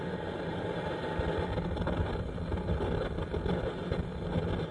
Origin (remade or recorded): recorded